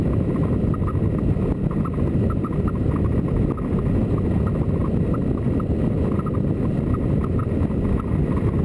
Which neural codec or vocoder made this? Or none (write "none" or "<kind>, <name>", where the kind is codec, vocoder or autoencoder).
none